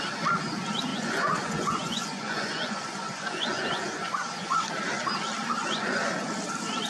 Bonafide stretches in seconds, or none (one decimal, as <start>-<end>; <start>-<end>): 0.0-0.9; 4.7-5.6; 6.3-6.9